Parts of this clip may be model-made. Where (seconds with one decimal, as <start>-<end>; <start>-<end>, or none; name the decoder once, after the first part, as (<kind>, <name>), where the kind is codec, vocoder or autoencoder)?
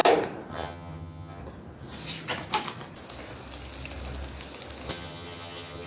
0.5-1.4 (vocoder, HiFi-GAN); 4.9-5.9